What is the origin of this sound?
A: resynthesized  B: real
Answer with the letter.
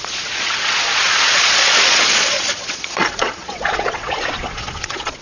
A